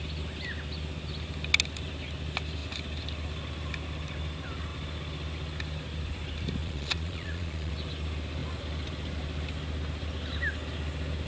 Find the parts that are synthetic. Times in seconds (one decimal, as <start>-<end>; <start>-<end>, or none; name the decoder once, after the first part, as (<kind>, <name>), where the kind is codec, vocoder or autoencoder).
6.6-7.7 (vocoder, Vocos)